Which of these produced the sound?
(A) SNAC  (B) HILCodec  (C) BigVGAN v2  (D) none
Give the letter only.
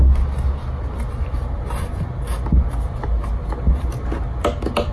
D